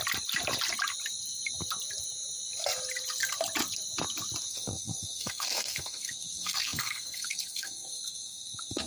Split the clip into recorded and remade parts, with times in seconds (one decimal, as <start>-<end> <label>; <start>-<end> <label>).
0.0-4.5 recorded; 4.5-8.9 remade